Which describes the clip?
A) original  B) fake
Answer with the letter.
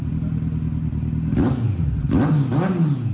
A